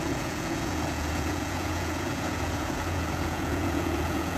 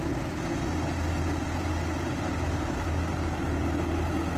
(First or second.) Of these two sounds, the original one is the second